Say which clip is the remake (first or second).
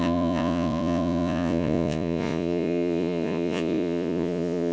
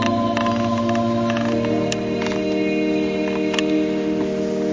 first